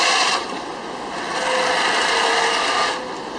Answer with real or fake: real